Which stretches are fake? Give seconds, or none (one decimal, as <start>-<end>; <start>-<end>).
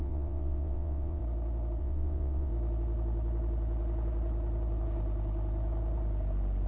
0.0-1.2; 1.8-2.5